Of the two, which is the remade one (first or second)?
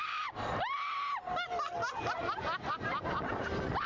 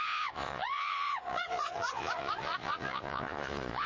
second